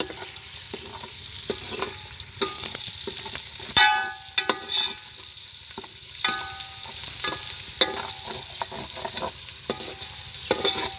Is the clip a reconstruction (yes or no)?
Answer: no